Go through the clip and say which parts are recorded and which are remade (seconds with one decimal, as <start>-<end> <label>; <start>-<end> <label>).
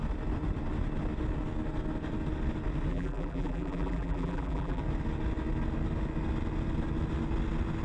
0.0-2.9 recorded; 2.9-4.8 remade; 4.8-7.8 recorded